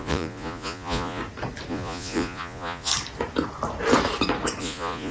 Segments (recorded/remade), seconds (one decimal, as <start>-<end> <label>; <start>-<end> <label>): 0.0-1.2 remade; 1.2-1.7 recorded; 1.7-2.9 remade; 2.9-4.6 recorded; 4.6-5.1 remade